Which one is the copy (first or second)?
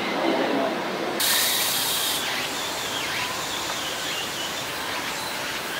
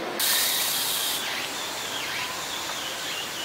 first